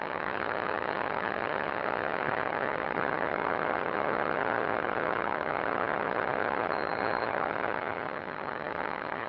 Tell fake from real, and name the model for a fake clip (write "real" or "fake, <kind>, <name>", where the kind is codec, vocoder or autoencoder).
fake, vocoder, HiFi-GAN